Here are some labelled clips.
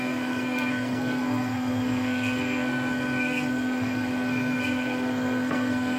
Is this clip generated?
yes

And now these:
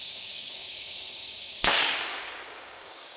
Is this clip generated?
yes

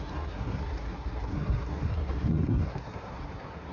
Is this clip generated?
yes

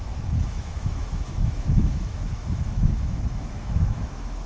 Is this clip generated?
yes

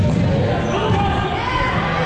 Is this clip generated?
no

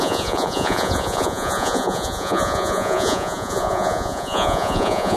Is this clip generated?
yes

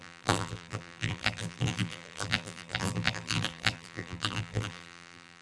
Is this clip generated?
yes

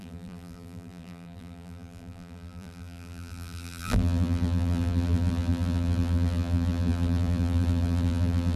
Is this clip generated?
yes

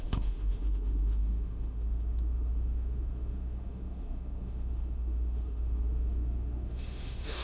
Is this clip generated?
yes